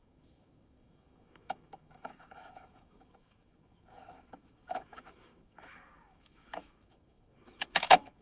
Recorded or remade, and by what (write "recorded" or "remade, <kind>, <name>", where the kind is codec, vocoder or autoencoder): remade, autoencoder, DAC-VAE